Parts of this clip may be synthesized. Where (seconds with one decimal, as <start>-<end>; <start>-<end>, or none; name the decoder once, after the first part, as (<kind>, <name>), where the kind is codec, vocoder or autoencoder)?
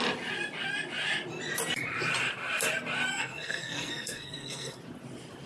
3.1-4.8 (codec, SNAC)